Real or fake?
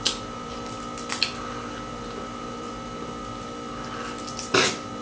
real